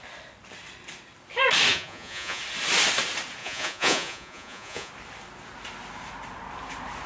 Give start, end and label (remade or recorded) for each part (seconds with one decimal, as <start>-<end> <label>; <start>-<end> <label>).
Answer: 0.0-1.7 recorded; 1.7-2.4 remade; 2.4-3.4 recorded; 3.4-4.9 remade; 4.9-7.1 recorded